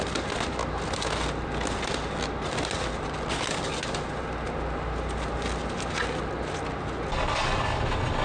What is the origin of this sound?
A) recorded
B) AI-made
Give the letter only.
A